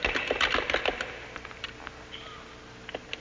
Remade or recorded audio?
recorded